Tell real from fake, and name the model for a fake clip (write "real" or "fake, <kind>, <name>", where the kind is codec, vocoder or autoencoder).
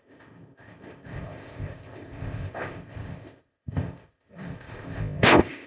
fake, codec, ZipCodec